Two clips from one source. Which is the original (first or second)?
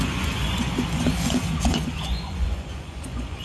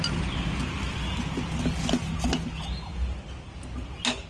second